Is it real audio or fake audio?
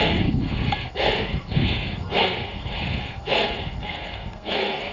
fake